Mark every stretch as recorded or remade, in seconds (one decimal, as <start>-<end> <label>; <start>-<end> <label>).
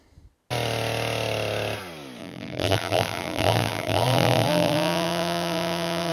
0.0-2.2 recorded; 2.2-6.1 remade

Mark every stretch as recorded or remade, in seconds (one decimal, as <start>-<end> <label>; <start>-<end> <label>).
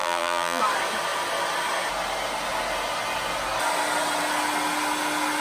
0.0-0.6 remade; 0.6-5.4 recorded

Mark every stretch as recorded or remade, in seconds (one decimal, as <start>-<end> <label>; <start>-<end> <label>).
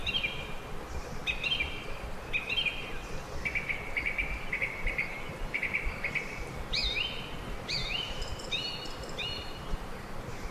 0.0-4.6 recorded; 4.6-6.8 remade; 6.8-7.3 recorded; 7.3-10.5 remade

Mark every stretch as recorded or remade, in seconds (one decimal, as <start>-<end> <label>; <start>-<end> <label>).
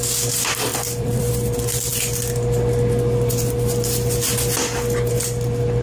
0.0-0.7 recorded; 0.7-1.3 remade; 1.3-5.8 recorded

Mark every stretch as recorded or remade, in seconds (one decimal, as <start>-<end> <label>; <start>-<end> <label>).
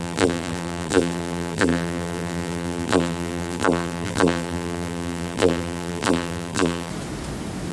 0.0-6.9 remade; 6.9-7.7 recorded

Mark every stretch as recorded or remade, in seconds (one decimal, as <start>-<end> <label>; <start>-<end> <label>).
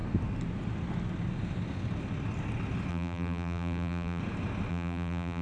0.0-2.9 recorded; 2.9-4.2 remade; 4.2-4.7 recorded; 4.7-5.4 remade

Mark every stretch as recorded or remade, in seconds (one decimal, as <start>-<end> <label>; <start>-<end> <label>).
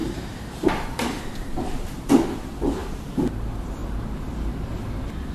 0.0-2.1 remade; 2.1-2.8 recorded; 2.8-3.3 remade; 3.3-5.3 recorded